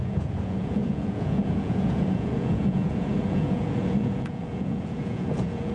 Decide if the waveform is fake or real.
fake